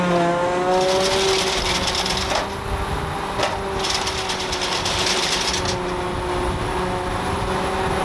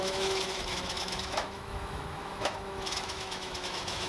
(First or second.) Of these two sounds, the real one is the first